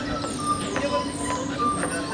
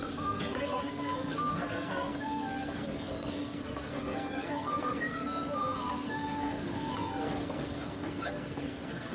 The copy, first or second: second